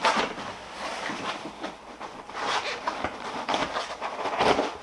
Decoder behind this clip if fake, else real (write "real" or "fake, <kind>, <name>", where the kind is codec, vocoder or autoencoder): fake, vocoder, BigVGAN v2